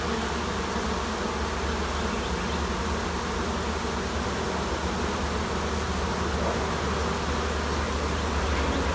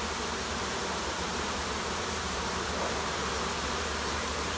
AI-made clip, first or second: second